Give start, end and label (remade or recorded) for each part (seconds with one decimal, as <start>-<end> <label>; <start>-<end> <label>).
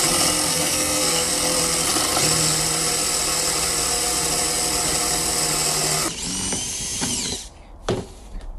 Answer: 0.0-0.5 recorded; 0.5-1.3 remade; 1.3-8.6 recorded